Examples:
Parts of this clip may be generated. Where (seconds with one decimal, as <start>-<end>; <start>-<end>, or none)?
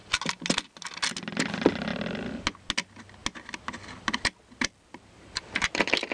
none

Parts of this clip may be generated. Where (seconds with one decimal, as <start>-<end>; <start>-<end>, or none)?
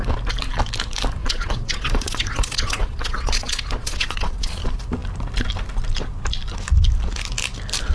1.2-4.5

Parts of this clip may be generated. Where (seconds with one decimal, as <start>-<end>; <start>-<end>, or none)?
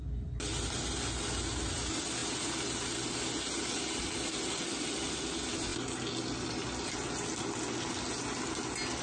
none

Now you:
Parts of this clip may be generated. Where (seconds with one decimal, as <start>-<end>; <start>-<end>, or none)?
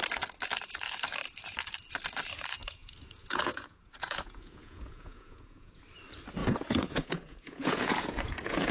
2.6-5.8; 6.4-8.7